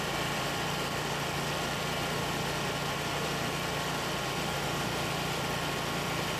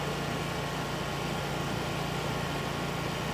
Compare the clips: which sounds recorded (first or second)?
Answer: second